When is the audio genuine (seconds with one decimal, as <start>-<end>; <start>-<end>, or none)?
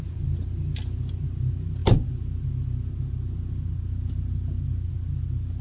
0.0-5.6